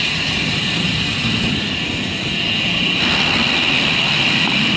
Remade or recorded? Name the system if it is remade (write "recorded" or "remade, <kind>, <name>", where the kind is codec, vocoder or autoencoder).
recorded